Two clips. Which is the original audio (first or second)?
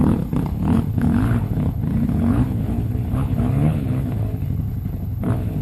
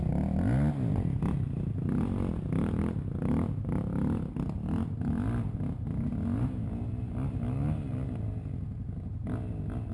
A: second